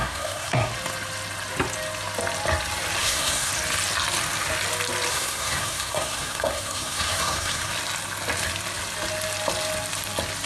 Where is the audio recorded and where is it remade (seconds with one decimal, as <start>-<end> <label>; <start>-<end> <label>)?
0.0-0.7 remade; 0.7-3.0 recorded; 3.0-3.5 remade; 3.5-5.1 recorded; 5.1-7.7 remade; 7.7-10.5 recorded

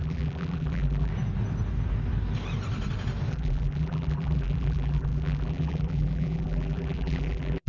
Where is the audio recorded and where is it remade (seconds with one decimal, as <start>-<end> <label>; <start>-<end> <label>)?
0.0-1.1 remade; 1.1-3.3 recorded; 3.3-7.7 remade

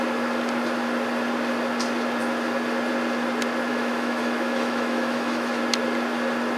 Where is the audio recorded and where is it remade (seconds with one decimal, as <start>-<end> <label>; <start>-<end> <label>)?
0.0-3.7 recorded; 3.7-5.6 remade; 5.6-6.6 recorded

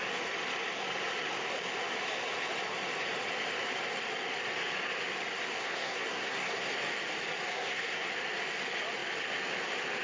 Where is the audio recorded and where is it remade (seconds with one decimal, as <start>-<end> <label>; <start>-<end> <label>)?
0.0-5.6 recorded; 5.6-6.7 remade; 6.7-7.5 recorded; 7.5-8.1 remade; 8.1-10.0 recorded

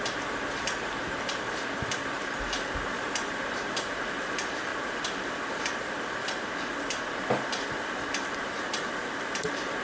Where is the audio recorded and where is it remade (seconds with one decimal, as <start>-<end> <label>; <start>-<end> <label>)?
0.0-4.7 recorded; 4.7-8.4 remade; 8.4-9.8 recorded

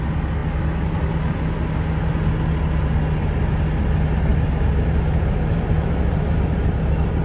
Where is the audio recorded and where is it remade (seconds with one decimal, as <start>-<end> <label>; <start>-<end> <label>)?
0.0-4.3 recorded; 4.3-7.2 remade